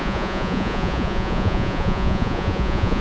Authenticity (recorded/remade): remade